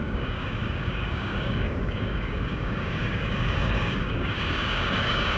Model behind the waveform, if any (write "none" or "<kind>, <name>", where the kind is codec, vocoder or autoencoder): codec, DAC